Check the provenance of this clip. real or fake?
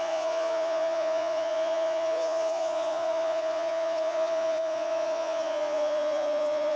fake